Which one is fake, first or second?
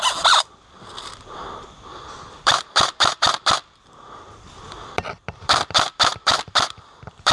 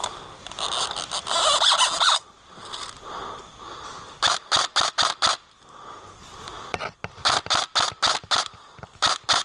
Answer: first